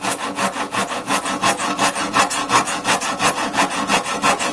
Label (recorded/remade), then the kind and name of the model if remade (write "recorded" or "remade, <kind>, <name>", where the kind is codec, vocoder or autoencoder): remade, vocoder, Vocos